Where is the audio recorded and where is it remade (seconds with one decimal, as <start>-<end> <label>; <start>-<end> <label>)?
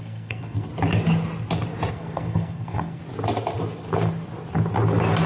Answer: 0.0-0.7 remade; 0.7-1.9 recorded; 1.9-3.0 remade; 3.0-5.3 recorded